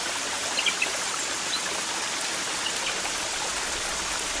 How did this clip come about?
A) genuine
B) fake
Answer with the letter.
A